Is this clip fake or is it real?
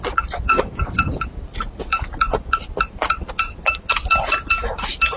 real